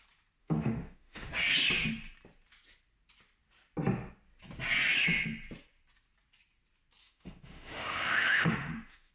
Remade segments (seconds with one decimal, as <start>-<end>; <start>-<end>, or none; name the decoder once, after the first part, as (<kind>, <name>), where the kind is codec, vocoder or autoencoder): 0.4-1.3 (autoencoder, DAC-VAE); 7.0-9.1